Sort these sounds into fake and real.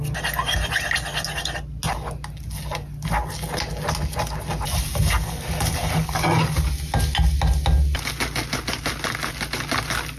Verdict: real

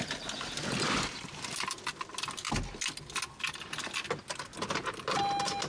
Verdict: real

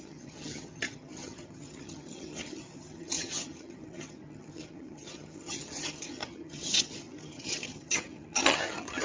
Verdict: fake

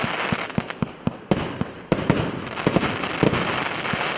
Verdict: real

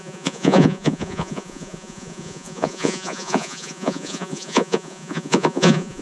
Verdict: fake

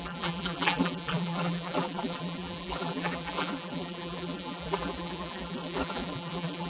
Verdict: fake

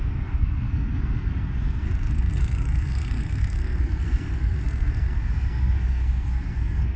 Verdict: fake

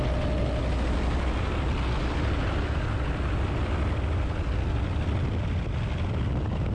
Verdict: real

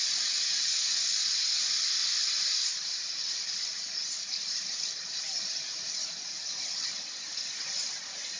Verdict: real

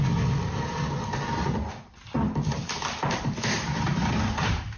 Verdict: real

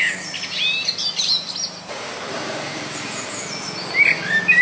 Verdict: real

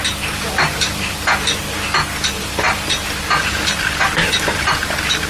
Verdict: real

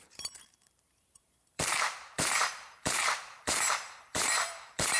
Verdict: fake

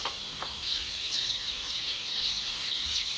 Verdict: fake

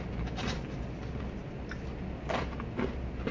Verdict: real